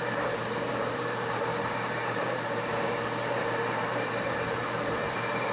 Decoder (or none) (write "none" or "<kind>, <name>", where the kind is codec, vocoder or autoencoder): vocoder, BigVGAN v2